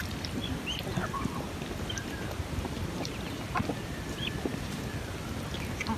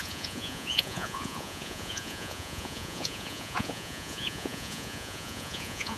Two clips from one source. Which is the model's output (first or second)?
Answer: second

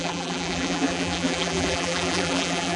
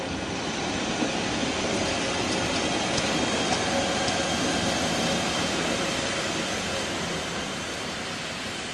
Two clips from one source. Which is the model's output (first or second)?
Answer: first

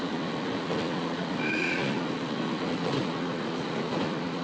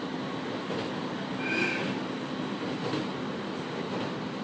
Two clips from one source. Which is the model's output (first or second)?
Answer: first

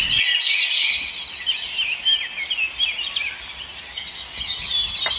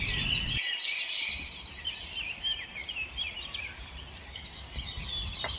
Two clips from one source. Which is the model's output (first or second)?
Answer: second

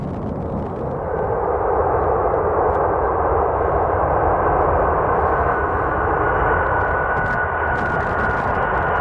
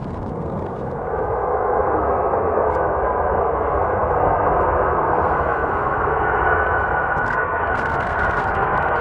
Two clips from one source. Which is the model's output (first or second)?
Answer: second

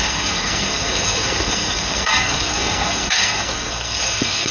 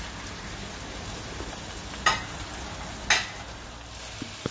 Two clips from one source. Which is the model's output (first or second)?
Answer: first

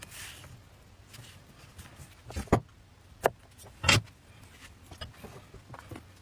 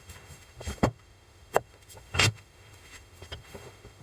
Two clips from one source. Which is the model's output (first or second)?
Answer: second